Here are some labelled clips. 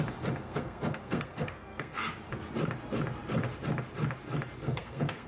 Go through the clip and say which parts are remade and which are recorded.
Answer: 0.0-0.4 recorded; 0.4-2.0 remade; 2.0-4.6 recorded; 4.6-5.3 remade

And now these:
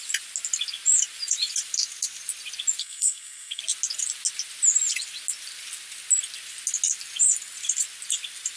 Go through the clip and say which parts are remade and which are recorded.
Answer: 0.0-2.8 recorded; 2.8-3.6 remade; 3.6-8.6 recorded

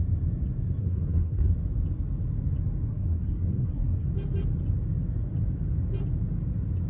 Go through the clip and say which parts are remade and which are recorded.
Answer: 0.0-0.8 recorded; 0.8-1.5 remade; 1.5-2.9 recorded; 2.9-4.1 remade; 4.1-6.9 recorded

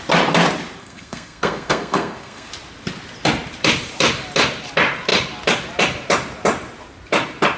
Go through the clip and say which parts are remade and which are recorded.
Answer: 0.0-0.8 recorded; 0.8-2.5 remade; 2.5-7.6 recorded

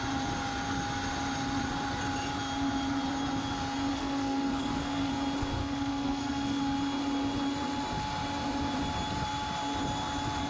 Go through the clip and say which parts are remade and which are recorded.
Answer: 0.0-3.9 recorded; 3.9-5.1 remade; 5.1-5.6 recorded; 5.6-6.6 remade; 6.6-10.5 recorded

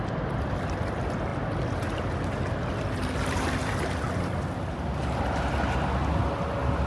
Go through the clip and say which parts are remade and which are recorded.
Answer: 0.0-6.9 recorded